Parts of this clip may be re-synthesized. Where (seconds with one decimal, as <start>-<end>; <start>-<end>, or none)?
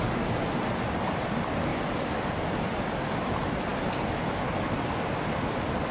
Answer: 1.7-3.3